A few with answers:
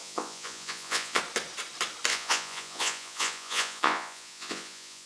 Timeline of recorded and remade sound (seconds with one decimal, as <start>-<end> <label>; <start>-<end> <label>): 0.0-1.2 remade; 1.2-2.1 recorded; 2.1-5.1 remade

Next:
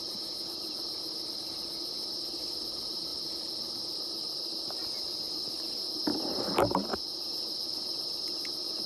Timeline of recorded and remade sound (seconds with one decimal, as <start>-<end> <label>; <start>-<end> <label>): 0.0-8.9 recorded

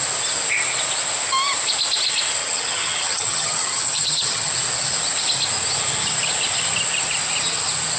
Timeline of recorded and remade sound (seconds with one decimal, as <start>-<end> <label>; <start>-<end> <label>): 0.0-2.4 recorded; 2.4-4.5 remade; 4.5-8.0 recorded

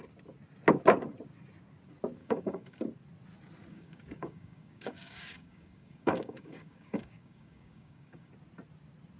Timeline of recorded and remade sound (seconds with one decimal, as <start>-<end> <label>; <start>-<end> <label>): 0.0-2.2 recorded; 2.2-2.8 remade; 2.8-3.7 recorded; 3.7-8.3 remade; 8.3-9.2 recorded